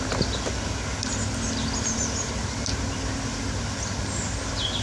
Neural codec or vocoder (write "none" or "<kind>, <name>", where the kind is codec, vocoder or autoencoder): none